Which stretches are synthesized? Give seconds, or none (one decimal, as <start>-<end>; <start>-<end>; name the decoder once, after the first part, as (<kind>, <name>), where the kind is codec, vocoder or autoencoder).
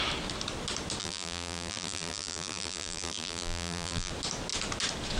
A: 1.0-4.1 (vocoder, BigVGAN v2)